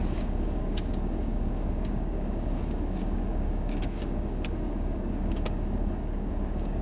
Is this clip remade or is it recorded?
remade